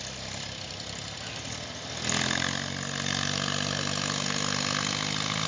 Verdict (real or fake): real